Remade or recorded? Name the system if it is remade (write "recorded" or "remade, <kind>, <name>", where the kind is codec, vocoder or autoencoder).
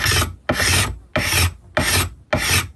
recorded